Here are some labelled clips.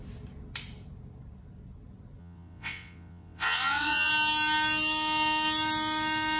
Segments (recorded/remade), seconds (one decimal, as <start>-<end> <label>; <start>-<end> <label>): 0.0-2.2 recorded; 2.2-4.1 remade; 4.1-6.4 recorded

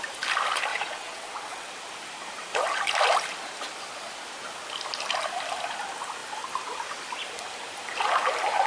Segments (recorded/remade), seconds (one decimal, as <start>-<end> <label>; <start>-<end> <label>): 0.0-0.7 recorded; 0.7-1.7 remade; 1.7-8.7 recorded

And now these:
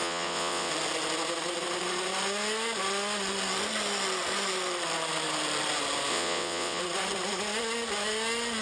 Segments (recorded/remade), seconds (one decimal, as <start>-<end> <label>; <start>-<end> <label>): 0.0-0.7 remade; 0.7-6.1 recorded; 6.1-6.8 remade; 6.8-8.6 recorded